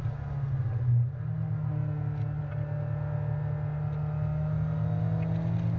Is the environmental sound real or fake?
real